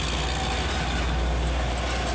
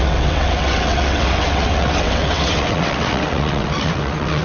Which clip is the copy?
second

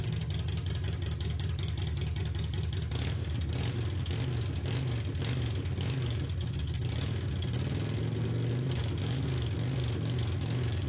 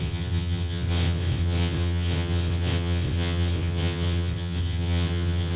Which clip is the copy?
second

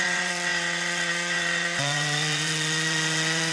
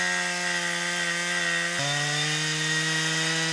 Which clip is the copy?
first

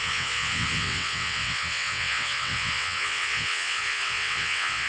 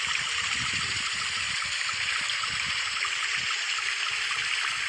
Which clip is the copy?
first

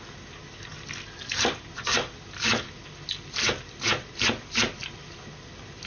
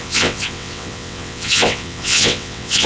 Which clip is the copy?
second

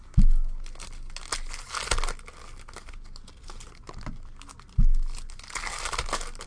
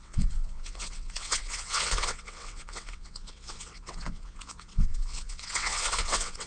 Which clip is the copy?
second